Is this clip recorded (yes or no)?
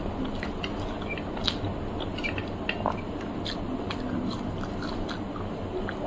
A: yes